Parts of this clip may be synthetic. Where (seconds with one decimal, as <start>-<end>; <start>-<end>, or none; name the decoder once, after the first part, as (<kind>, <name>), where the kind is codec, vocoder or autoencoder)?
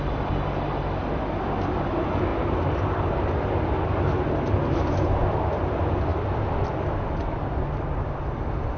none